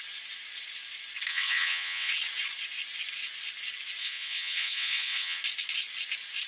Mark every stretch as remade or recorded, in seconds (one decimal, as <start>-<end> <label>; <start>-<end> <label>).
0.0-1.3 recorded; 1.3-2.1 remade; 2.1-4.0 recorded; 4.0-5.4 remade; 5.4-6.5 recorded

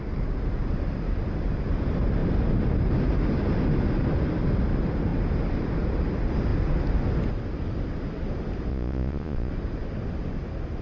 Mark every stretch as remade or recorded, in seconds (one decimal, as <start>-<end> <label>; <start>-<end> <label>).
0.0-8.7 recorded; 8.7-9.5 remade; 9.5-10.8 recorded